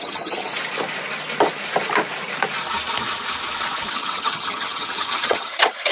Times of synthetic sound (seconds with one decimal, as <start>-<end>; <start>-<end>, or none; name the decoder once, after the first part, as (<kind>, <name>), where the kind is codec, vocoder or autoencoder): 0.0-0.5 (vocoder, HiFi-GAN); 3.9-5.9